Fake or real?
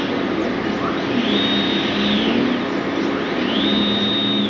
real